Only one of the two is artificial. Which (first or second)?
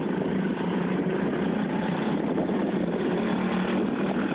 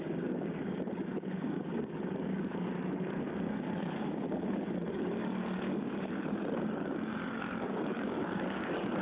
second